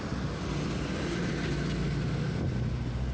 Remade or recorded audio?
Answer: recorded